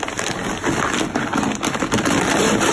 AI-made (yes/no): no